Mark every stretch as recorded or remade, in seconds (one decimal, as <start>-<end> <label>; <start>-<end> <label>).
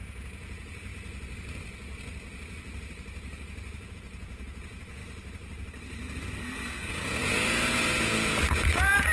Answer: 0.0-0.9 remade; 0.9-3.9 recorded; 3.9-5.0 remade; 5.0-6.9 recorded; 6.9-9.1 remade